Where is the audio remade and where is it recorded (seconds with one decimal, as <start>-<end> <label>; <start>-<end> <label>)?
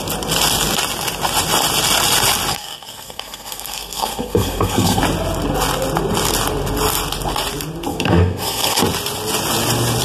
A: 0.0-2.5 recorded; 2.5-5.0 remade; 5.0-7.9 recorded; 7.9-8.8 remade; 8.8-10.0 recorded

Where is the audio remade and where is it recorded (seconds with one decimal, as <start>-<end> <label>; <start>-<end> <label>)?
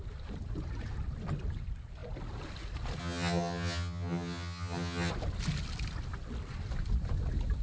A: 0.0-3.0 recorded; 3.0-5.1 remade; 5.1-7.6 recorded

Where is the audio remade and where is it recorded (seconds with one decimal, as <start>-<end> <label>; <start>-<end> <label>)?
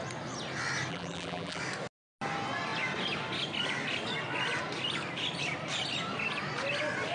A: 0.0-0.9 recorded; 0.9-1.6 remade; 1.6-7.1 recorded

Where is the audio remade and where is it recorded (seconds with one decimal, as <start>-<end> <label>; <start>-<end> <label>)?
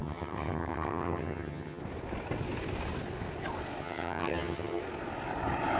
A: 0.0-1.8 remade; 1.8-3.8 recorded; 3.8-4.8 remade; 4.8-5.8 recorded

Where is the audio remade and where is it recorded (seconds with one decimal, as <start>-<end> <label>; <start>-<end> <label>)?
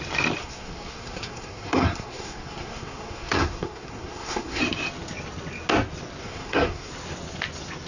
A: 0.0-0.4 recorded; 0.4-4.6 remade; 4.6-6.2 recorded; 6.2-6.9 remade; 6.9-7.9 recorded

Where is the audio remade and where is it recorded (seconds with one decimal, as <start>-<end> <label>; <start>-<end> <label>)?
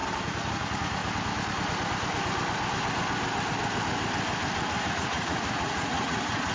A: 0.0-0.5 recorded; 0.5-1.0 remade; 1.0-4.9 recorded; 4.9-6.5 remade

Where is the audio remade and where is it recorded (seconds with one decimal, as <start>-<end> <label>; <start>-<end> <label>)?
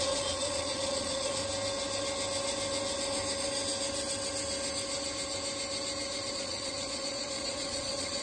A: 0.0-1.4 remade; 1.4-6.3 recorded; 6.3-8.2 remade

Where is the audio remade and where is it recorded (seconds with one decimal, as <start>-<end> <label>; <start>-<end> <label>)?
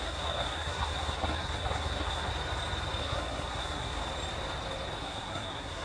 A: 0.0-2.3 remade; 2.3-3.0 recorded; 3.0-4.0 remade; 4.0-5.0 recorded; 5.0-5.8 remade